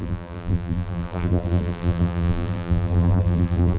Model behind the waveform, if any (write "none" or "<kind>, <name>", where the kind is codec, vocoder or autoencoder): vocoder, BigVGAN v2